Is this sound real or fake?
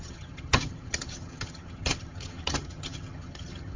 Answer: fake